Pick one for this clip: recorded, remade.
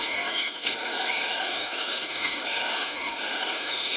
remade